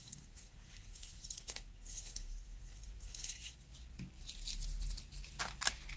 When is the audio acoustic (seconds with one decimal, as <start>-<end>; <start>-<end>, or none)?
3.7-6.0